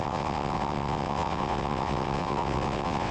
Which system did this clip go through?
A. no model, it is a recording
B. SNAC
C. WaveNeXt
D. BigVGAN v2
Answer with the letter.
C